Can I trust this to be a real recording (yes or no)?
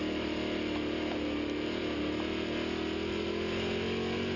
yes